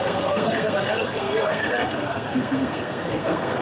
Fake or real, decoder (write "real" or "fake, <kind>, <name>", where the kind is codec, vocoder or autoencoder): fake, codec, SNAC